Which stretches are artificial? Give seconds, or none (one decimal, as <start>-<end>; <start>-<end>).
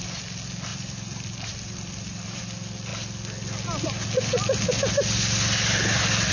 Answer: 0.7-2.4